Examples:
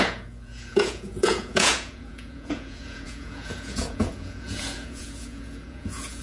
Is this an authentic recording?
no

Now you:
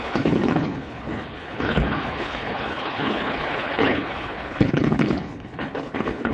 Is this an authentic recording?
no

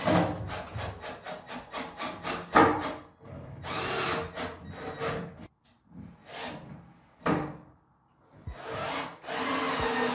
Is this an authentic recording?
yes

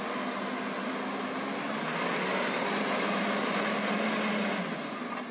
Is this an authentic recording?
yes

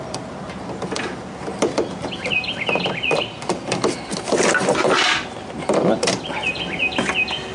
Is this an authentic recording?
yes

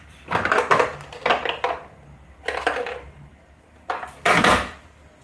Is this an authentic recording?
yes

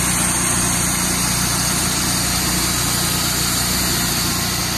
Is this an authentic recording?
yes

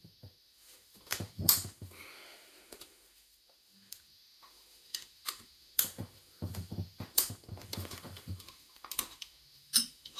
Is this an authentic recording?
no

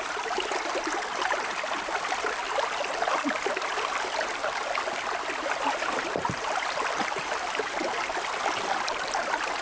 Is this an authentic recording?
no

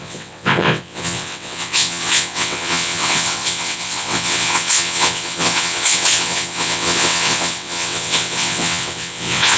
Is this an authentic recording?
no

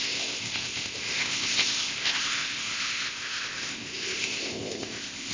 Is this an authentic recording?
no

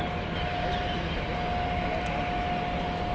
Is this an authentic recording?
yes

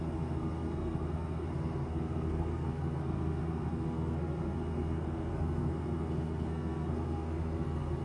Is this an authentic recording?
no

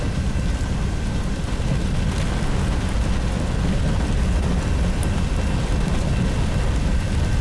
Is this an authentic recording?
yes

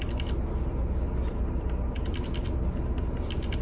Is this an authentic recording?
yes